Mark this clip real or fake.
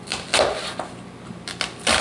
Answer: real